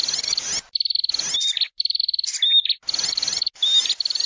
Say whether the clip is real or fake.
real